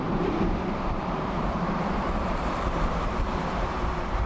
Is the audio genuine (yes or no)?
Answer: no